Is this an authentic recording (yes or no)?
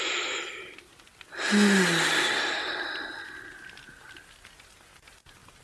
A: yes